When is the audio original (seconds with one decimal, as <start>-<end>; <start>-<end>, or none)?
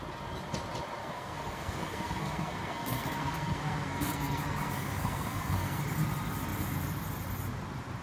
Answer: 0.0-1.0; 5.8-8.0